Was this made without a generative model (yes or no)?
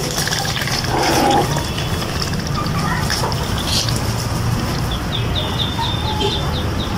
no